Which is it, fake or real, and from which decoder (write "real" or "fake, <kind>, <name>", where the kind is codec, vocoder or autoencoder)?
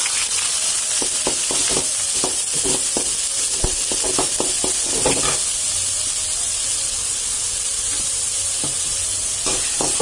real